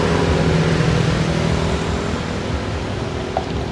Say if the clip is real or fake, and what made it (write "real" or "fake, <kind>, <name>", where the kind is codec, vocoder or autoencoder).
real